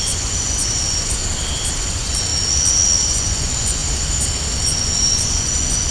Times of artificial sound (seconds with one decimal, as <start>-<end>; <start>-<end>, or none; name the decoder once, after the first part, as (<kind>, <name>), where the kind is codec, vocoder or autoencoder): 0.0-1.2 (vocoder, Vocos); 1.8-2.3; 3.1-3.8; 4.6-5.9